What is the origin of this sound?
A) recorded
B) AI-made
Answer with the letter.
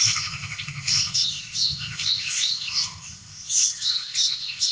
B